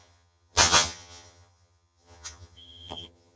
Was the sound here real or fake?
fake